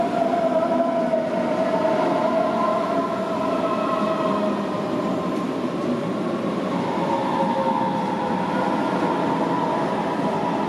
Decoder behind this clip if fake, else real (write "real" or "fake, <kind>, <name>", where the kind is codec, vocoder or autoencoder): real